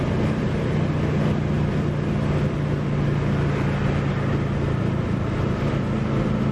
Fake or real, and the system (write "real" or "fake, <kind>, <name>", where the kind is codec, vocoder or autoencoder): real